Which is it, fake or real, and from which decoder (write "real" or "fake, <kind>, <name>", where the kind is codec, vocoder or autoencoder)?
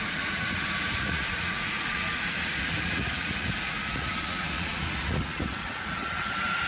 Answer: fake, vocoder, Vocos